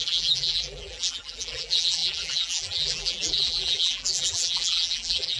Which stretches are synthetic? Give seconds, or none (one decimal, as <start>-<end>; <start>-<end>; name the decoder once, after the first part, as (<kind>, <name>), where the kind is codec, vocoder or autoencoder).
0.0-5.4 (vocoder, BigVGAN v2)

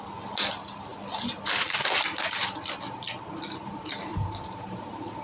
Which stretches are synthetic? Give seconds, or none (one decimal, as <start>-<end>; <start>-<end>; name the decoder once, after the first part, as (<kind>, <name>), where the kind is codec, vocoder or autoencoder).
4.1-5.2 (vocoder, BigVGAN v2)